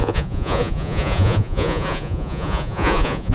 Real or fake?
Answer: fake